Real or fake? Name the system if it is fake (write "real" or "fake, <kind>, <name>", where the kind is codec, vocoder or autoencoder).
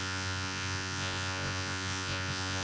fake, vocoder, Vocos